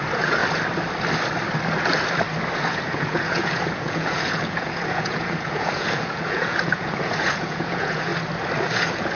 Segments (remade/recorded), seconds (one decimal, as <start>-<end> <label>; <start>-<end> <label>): 0.0-0.4 remade; 0.4-2.7 recorded; 2.7-8.1 remade; 8.1-8.6 recorded; 8.6-9.2 remade

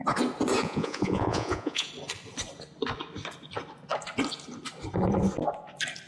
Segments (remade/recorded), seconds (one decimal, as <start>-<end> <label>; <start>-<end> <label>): 0.0-0.6 recorded; 0.6-1.9 remade; 1.9-6.1 recorded

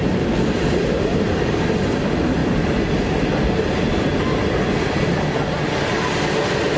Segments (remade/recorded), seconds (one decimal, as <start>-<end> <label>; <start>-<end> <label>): 0.0-0.8 recorded; 0.8-1.4 remade; 1.4-6.8 recorded

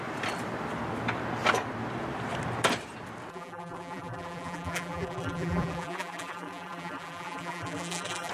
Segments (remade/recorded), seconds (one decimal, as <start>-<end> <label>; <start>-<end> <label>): 0.0-3.3 recorded; 3.3-8.3 remade

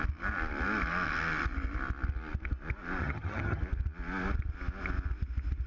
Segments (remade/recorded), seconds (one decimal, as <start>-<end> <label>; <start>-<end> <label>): 0.0-3.0 recorded; 3.0-3.6 remade; 3.6-5.7 recorded